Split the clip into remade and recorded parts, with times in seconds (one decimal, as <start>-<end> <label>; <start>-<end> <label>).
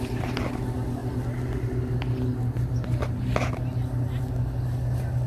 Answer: 0.0-5.3 recorded